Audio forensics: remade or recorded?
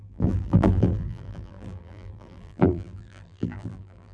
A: remade